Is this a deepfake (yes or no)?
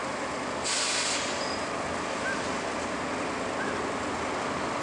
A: no